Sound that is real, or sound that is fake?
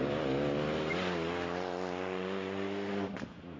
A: real